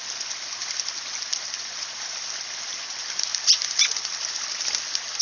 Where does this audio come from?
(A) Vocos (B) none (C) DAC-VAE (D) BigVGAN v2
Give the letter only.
B